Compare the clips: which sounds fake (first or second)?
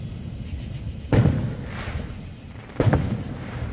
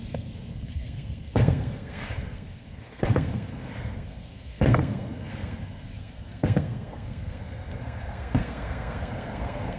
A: second